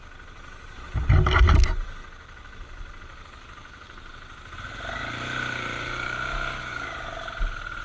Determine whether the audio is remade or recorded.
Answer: recorded